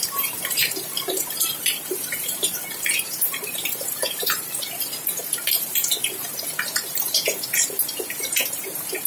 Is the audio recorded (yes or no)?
no